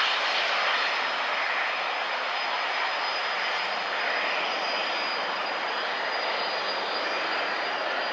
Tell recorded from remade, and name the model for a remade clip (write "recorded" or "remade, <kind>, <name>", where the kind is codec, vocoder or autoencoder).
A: recorded